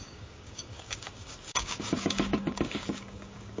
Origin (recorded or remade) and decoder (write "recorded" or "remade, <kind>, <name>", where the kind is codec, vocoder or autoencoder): remade, codec, DAC